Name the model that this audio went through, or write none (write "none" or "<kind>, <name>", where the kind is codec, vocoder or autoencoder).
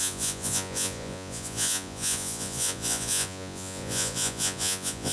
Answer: vocoder, Vocos